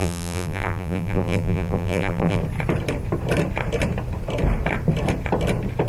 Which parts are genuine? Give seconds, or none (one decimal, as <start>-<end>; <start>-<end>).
2.4-5.9

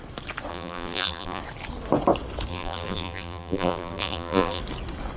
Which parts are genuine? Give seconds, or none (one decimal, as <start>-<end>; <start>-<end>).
0.0-0.5; 1.4-2.5; 4.6-5.2

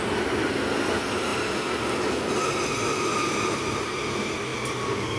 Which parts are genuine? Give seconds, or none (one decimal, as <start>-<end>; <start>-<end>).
0.0-3.1; 3.9-4.5

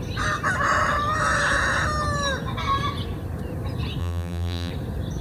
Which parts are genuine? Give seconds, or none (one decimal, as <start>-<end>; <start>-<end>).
0.0-4.0; 4.7-5.2

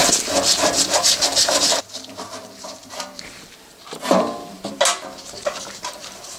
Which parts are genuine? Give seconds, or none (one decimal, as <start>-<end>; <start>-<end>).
none

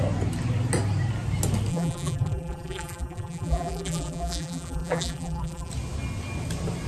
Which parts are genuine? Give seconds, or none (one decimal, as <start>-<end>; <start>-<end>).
0.0-1.7; 5.7-6.9

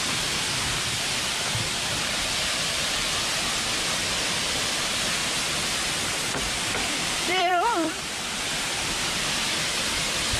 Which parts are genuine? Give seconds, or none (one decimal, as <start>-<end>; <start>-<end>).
0.0-0.4; 3.3-5.2